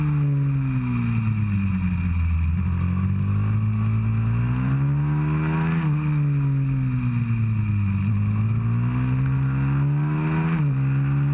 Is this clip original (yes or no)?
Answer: yes